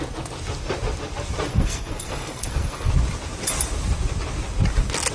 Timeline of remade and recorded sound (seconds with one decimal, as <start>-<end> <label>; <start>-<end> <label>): 0.0-1.5 recorded; 1.5-2.9 remade; 2.9-5.1 recorded